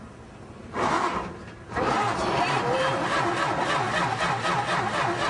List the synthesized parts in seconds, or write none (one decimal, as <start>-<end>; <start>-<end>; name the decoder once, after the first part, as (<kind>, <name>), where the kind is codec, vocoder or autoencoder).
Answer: 0.6-3.6 (vocoder, BigVGAN v2)